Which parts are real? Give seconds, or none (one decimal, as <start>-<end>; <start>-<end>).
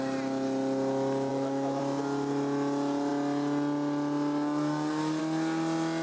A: 0.0-1.3; 1.8-6.0